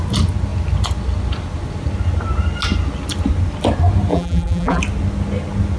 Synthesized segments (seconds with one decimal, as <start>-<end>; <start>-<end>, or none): 4.1-4.8